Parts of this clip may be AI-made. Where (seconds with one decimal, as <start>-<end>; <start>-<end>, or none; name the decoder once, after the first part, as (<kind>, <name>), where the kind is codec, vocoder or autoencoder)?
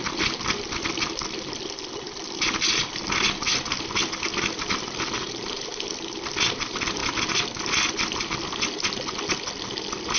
none